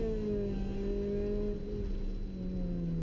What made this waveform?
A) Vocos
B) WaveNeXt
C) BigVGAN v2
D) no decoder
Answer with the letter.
D